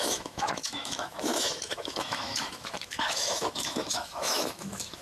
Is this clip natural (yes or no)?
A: no